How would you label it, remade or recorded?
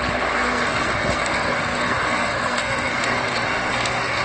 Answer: remade